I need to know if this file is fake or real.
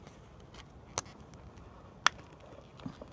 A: real